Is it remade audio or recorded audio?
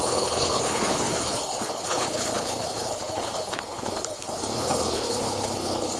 remade